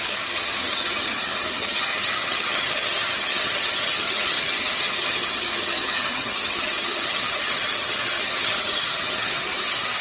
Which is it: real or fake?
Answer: fake